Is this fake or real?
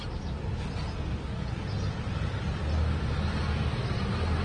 real